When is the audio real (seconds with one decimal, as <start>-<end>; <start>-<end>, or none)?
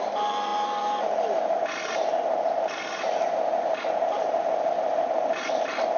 0.0-6.0